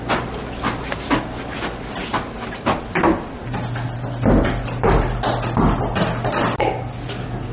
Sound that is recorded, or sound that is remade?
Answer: recorded